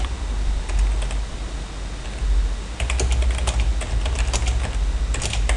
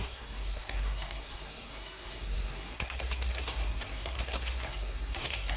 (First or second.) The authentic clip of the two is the first